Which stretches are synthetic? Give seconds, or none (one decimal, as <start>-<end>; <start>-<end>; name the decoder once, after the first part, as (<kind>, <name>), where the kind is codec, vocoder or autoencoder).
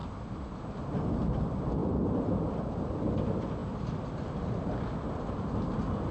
0.0-1.2 (vocoder, BigVGAN v2); 1.8-2.8; 3.6-4.6